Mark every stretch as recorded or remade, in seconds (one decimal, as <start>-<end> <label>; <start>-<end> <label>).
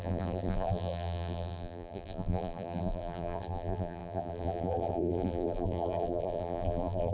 0.0-7.1 remade